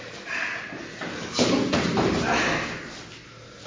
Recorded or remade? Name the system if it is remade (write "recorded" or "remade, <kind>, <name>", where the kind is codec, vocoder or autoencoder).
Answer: recorded